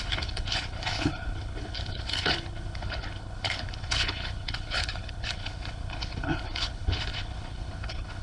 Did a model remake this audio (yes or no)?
yes